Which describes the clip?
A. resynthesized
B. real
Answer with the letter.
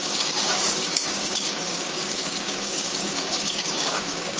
A